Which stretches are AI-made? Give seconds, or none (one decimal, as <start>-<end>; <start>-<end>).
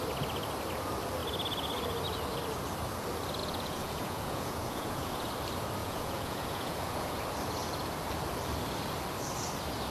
3.4-5.3; 5.8-7.2